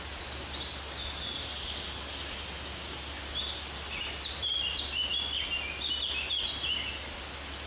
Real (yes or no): yes